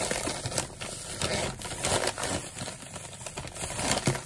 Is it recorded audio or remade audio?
recorded